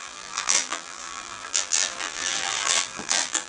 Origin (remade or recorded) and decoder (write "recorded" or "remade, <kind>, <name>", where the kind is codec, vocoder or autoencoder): remade, vocoder, BigVGAN v2